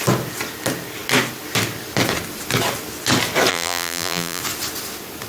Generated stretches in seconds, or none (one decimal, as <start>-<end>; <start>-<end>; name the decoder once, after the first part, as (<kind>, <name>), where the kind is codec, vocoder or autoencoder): 3.5-4.4 (vocoder, BigVGAN v2)